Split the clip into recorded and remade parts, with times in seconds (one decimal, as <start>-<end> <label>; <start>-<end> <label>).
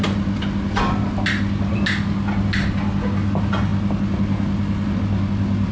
0.0-5.7 recorded